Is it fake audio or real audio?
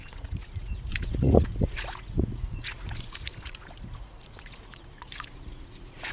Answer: fake